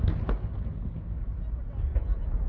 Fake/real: real